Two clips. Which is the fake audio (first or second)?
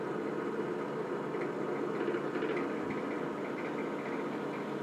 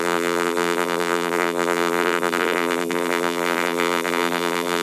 second